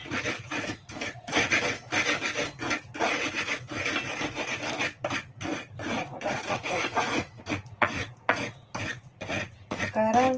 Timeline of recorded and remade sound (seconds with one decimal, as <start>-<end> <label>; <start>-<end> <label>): 0.0-1.6 remade; 1.6-3.0 recorded; 3.0-3.6 remade; 3.6-5.8 recorded; 5.8-9.9 remade; 9.9-10.4 recorded